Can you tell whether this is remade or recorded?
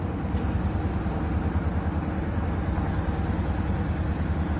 recorded